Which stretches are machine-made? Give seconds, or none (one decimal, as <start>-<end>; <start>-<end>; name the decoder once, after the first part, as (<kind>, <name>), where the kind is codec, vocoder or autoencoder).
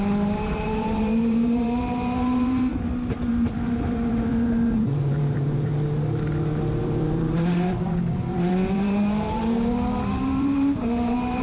0.0-2.7 (vocoder, BigVGAN v2); 3.3-5.7; 6.8-11.4